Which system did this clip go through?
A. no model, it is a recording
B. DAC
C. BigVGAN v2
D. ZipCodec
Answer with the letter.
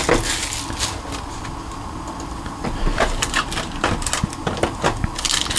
A